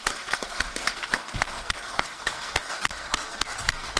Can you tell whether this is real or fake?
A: fake